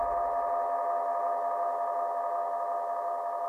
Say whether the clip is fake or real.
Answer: real